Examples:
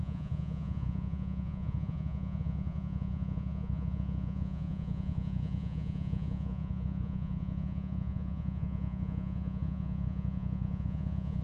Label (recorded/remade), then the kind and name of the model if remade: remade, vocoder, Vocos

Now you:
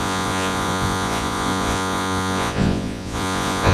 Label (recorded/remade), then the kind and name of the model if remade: remade, vocoder, Vocos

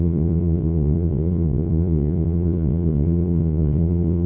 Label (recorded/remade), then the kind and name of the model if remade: remade, vocoder, Vocos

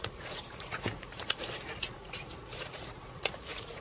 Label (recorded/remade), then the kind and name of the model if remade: remade, vocoder, Vocos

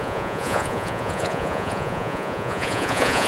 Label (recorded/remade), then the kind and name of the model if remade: remade, vocoder, Vocos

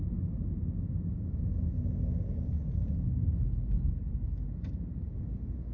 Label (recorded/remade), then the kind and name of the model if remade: recorded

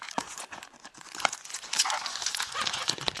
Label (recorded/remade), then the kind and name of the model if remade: remade, vocoder, Vocos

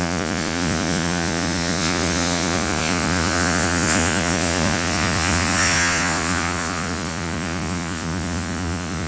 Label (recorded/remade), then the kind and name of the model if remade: remade, vocoder, Vocos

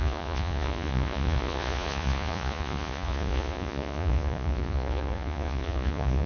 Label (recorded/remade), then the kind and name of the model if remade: remade, vocoder, Vocos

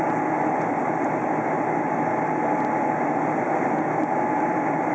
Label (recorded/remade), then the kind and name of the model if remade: recorded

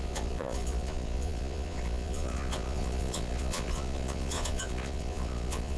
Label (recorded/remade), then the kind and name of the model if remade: remade, vocoder, Vocos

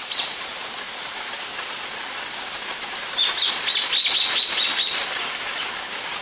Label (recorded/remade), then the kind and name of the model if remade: recorded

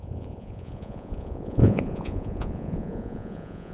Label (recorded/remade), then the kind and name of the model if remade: remade, vocoder, Vocos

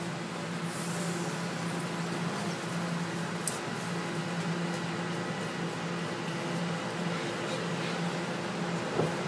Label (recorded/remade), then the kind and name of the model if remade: recorded